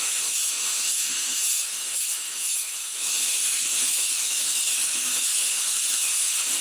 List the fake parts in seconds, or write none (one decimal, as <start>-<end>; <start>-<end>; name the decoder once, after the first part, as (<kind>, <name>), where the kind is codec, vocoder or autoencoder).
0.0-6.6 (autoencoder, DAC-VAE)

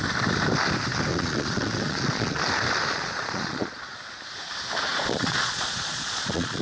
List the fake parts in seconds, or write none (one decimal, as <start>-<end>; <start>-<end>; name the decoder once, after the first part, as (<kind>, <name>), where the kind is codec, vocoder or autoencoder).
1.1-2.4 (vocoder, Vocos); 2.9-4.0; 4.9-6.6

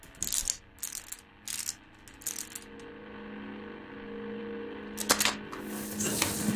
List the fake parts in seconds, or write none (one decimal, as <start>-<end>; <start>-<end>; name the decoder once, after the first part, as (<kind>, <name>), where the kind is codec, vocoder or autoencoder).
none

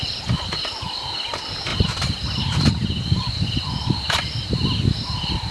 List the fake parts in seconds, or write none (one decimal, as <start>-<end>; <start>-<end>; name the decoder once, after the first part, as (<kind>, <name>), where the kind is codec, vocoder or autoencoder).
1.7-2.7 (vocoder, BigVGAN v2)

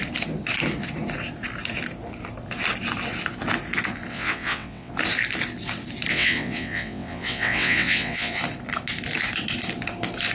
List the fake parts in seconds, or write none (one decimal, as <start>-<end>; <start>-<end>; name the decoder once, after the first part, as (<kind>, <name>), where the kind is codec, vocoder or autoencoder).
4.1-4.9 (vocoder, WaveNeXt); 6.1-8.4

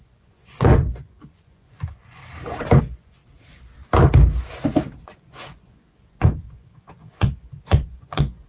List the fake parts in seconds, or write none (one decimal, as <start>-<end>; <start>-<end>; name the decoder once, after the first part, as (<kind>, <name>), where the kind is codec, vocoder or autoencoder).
0.0-2.2 (vocoder, Vocos); 2.8-3.2; 5.0-8.5